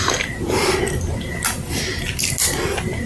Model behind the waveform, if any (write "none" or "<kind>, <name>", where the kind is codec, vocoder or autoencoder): none